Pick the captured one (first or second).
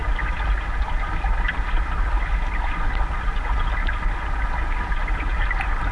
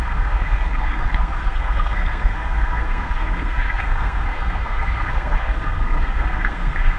first